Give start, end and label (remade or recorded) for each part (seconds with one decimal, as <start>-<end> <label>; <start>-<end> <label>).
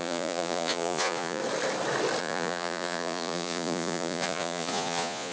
0.0-1.4 remade; 1.4-2.2 recorded; 2.2-5.3 remade